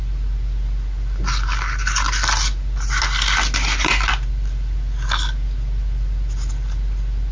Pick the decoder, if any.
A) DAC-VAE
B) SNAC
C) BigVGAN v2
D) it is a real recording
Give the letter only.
D